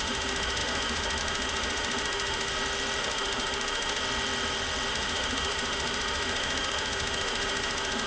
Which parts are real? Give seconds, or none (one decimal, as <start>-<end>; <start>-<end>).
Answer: 2.5-3.0; 4.0-4.9